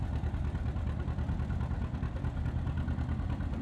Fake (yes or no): no